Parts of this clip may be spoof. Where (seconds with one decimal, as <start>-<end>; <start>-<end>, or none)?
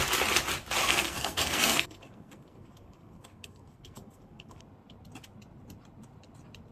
0.8-4.6